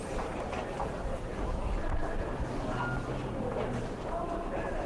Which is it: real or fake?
real